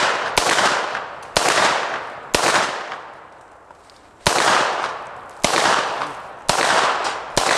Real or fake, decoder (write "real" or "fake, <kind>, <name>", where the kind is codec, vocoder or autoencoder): real